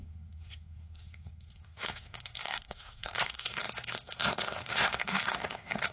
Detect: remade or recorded remade